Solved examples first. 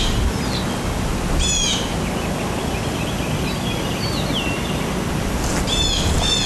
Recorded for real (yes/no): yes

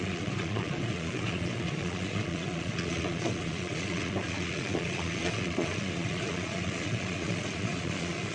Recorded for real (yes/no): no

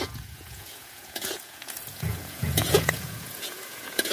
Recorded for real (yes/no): no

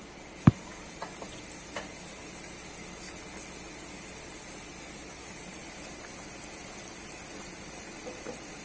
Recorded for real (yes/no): yes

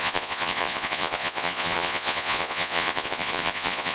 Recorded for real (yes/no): no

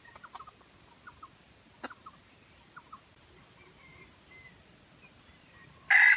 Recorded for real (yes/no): yes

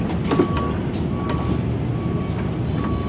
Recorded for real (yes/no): yes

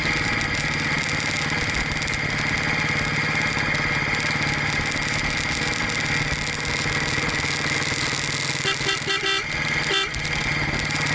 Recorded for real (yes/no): yes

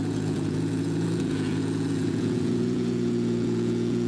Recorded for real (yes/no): no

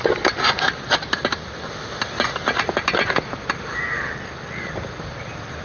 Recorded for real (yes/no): yes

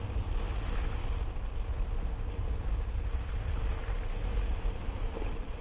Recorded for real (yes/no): yes